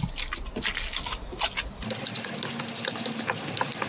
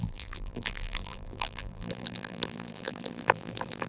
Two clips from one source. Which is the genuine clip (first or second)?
first